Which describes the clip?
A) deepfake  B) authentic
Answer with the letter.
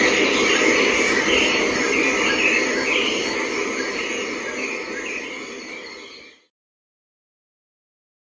B